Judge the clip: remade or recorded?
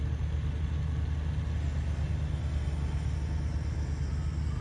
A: recorded